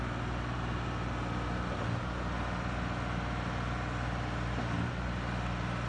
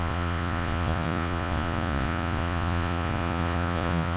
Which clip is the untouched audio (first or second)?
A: first